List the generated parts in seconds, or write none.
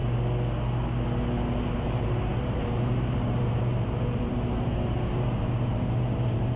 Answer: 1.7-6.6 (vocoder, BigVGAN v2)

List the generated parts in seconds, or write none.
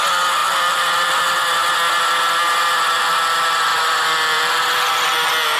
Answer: 0.4-1.2 (vocoder, BigVGAN v2); 3.7-4.5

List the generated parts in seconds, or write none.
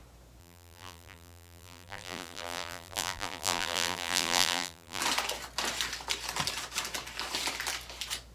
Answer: 0.4-5.0 (vocoder, BigVGAN v2)